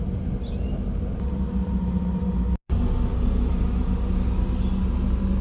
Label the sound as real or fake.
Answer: real